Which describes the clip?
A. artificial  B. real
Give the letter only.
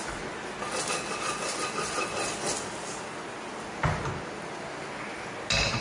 B